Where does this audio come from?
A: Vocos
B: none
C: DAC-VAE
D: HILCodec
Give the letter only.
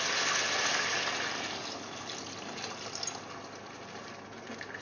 B